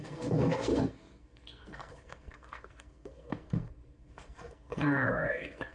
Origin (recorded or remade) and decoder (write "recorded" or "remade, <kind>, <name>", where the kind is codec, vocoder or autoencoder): remade, codec, SNAC